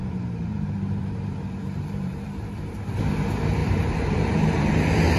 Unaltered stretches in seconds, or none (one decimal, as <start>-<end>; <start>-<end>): 3.0-3.6; 4.7-5.2